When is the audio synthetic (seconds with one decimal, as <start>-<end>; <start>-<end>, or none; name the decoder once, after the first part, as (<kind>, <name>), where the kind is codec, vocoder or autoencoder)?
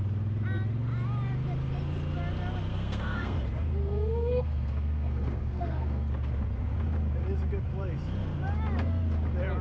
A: 2.7-3.4 (codec, SNAC); 3.8-6.1